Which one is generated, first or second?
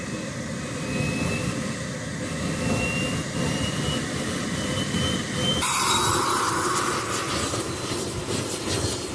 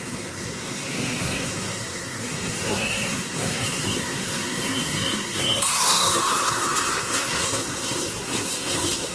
second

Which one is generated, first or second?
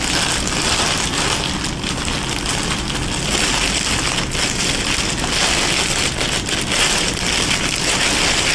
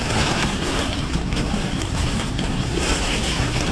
second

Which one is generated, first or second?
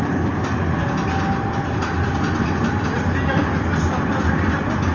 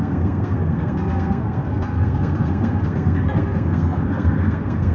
second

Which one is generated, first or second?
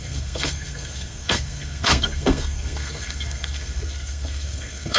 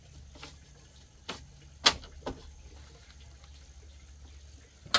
first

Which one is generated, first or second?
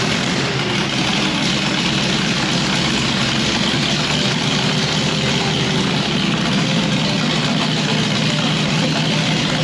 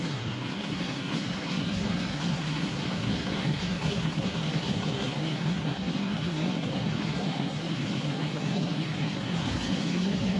second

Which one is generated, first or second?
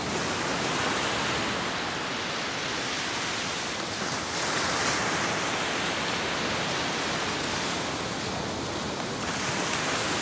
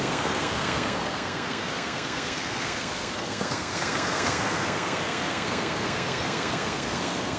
second